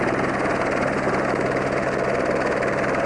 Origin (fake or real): real